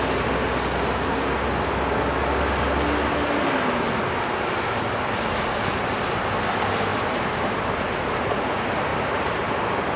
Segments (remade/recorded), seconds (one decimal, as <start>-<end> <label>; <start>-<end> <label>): 0.0-6.9 recorded; 6.9-7.7 remade; 7.7-8.9 recorded; 8.9-9.6 remade; 9.6-10.0 recorded